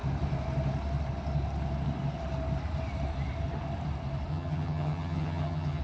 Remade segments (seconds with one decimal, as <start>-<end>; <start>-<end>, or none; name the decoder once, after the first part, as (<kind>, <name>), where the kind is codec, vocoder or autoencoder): 4.3-5.8 (vocoder, HiFi-GAN)